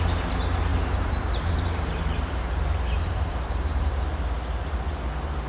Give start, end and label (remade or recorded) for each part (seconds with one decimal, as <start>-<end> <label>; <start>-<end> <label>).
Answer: 0.0-0.7 recorded; 0.7-4.0 remade; 4.0-5.5 recorded